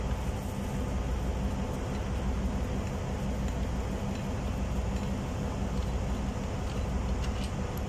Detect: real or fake real